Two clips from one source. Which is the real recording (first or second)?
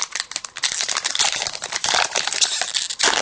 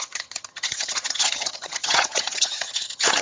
first